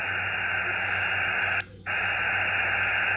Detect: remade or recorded recorded